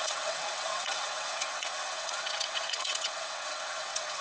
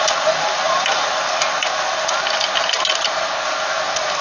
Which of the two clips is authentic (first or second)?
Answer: second